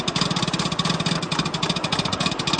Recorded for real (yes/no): yes